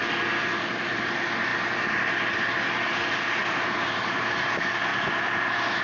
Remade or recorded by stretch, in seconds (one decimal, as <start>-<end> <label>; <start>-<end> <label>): 0.0-3.4 recorded; 3.4-4.4 remade; 4.4-4.9 recorded; 4.9-5.8 remade